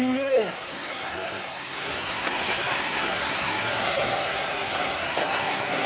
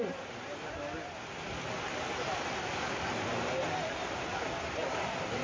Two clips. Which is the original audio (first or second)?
second